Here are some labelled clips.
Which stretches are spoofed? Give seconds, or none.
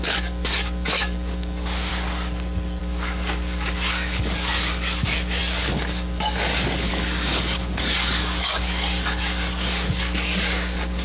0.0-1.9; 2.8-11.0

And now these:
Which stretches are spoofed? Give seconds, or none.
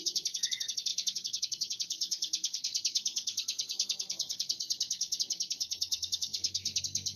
0.0-7.2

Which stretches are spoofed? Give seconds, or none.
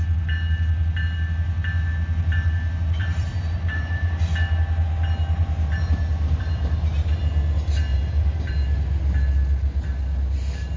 3.0-4.2; 5.4-7.2; 7.9-8.5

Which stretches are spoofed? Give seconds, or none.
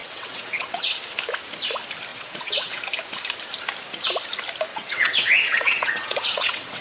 0.0-1.0; 2.1-2.8; 4.7-6.8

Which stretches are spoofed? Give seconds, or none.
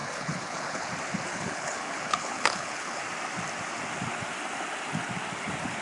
0.0-0.9; 1.3-3.0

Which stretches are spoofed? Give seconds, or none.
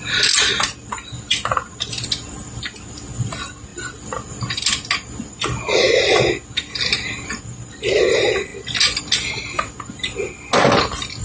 none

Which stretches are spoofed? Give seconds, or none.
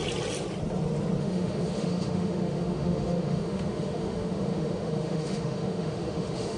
1.2-6.6